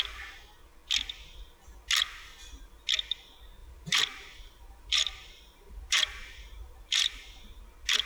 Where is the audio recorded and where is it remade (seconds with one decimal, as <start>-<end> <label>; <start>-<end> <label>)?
0.0-3.6 recorded; 3.6-7.6 remade; 7.6-8.1 recorded